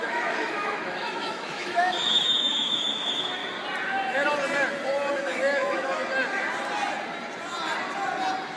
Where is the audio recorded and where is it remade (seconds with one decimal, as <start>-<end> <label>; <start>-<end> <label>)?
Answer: 0.0-3.4 remade; 3.4-5.1 recorded; 5.1-6.0 remade; 6.0-8.6 recorded